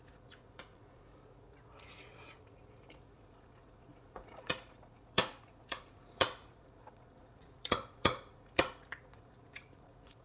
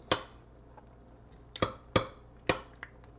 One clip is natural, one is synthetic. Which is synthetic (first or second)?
first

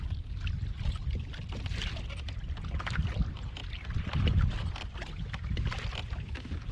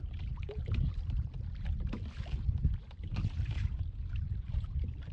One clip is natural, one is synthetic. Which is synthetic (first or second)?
second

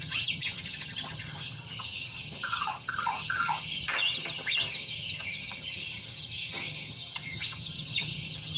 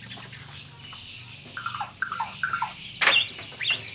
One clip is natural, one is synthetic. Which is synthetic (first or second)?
first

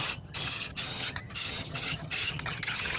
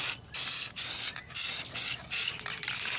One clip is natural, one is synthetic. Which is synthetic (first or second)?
first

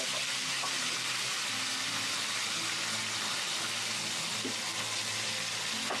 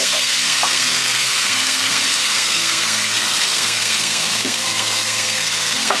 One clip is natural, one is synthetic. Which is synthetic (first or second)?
second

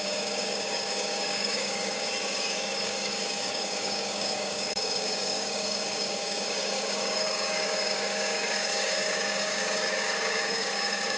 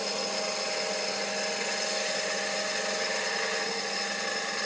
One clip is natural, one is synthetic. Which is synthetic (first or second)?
first